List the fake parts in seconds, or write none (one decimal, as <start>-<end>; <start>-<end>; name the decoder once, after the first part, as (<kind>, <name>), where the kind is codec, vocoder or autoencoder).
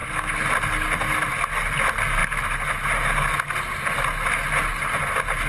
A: none